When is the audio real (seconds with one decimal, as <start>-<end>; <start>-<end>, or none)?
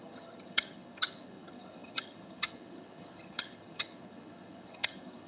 none